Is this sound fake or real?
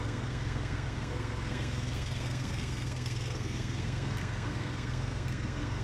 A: fake